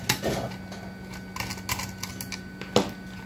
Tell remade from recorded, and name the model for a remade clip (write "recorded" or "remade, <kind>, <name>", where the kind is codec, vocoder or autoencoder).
recorded